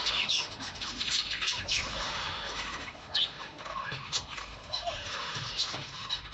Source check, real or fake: fake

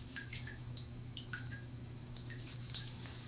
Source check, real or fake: fake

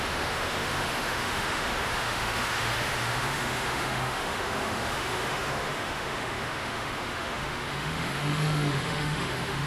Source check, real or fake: fake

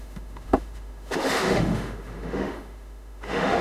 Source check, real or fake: fake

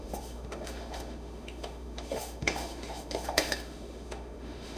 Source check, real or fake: fake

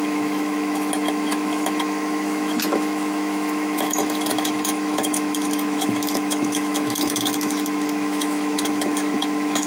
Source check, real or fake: fake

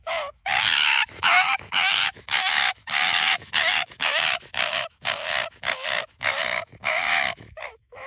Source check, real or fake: fake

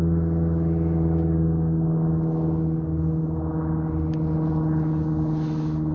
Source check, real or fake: real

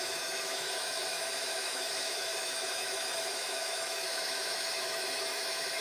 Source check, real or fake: fake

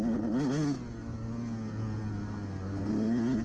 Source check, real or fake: real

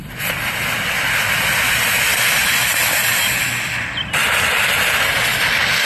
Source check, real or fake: real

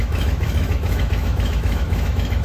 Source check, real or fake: fake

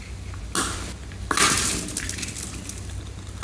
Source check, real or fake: real